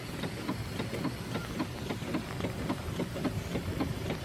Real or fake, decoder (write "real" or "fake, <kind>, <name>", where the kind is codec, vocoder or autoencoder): real